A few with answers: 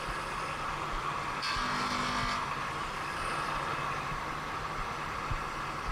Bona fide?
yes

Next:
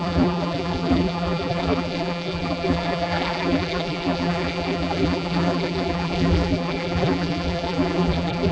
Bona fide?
no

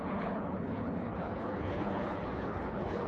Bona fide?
no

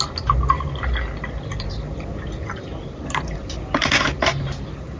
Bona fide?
yes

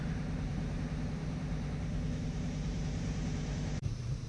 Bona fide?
no